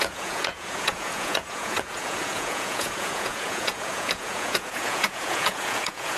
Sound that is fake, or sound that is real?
fake